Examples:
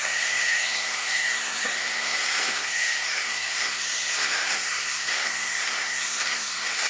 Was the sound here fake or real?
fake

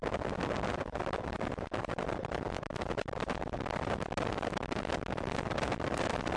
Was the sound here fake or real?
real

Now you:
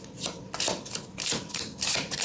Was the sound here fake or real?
real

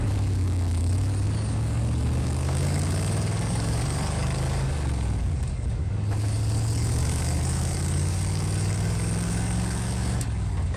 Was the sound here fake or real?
fake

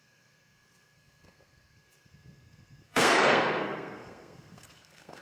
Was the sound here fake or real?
fake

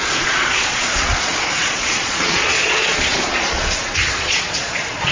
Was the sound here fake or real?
fake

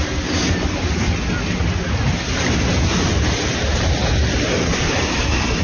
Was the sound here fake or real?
real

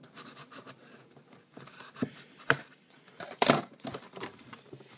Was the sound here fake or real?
fake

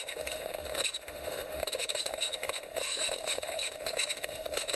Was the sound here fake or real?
fake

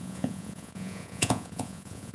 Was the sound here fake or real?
fake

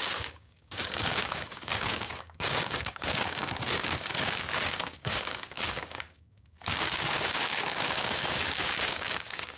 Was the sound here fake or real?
fake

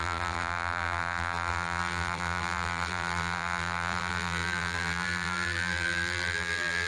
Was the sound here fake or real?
fake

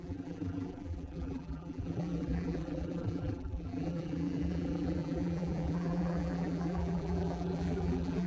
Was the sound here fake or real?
fake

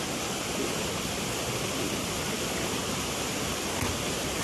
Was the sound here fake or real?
real